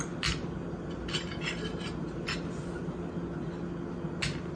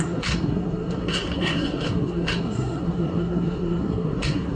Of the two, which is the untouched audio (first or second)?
first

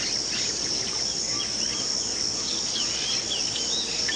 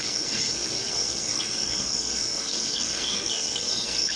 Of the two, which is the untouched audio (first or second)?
first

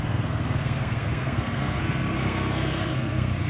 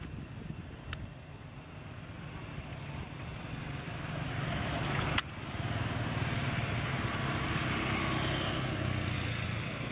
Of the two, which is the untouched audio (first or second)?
second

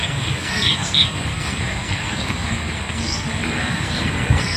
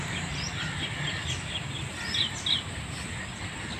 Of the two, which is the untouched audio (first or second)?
second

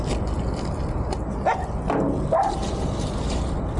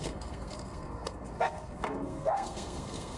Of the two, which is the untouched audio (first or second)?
first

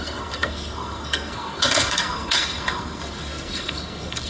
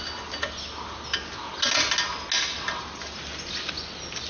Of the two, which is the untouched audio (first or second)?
second